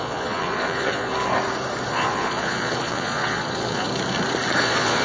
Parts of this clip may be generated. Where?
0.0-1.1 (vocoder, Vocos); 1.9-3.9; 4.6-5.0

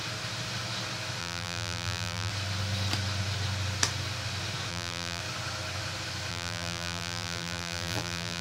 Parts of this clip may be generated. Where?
1.2-2.3 (vocoder, BigVGAN v2); 4.7-5.2; 6.3-8.4